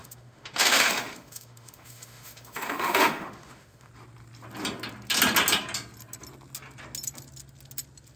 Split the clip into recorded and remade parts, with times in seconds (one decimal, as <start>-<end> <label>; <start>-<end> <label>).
0.0-3.9 remade; 3.9-8.2 recorded